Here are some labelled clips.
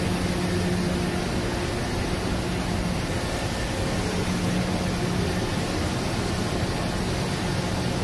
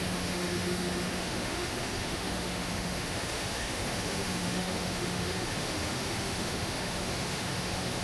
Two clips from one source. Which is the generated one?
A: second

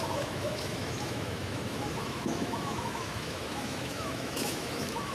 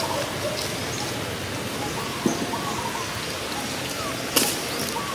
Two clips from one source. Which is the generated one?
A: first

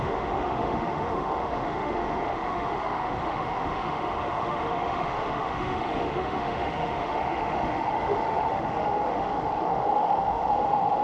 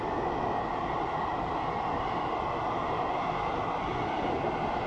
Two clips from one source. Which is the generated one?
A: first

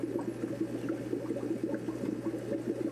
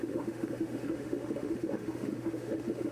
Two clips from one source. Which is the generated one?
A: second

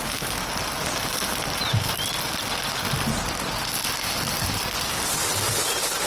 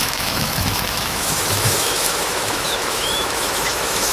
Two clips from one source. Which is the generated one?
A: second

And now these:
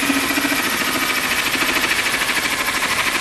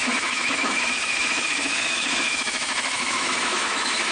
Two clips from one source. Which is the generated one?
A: second